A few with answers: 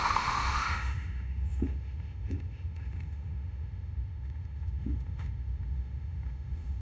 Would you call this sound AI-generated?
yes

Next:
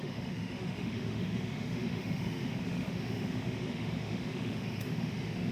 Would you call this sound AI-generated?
yes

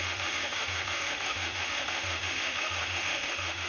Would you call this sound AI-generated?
yes